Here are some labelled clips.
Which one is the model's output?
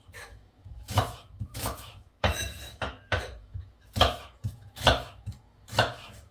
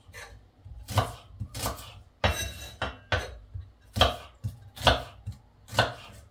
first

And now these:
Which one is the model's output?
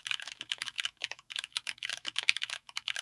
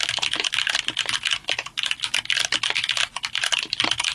first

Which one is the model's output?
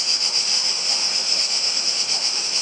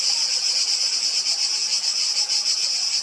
first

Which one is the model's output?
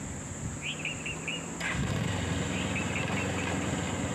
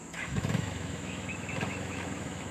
second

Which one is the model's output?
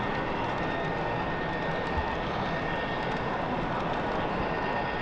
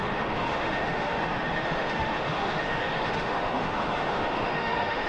second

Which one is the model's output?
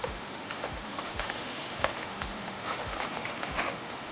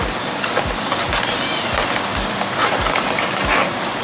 first